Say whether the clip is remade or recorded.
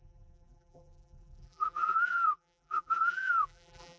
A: remade